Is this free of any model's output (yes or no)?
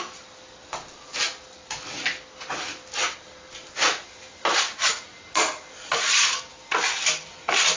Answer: yes